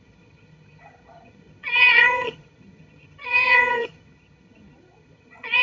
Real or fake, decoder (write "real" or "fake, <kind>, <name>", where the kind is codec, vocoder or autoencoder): fake, vocoder, HiFi-GAN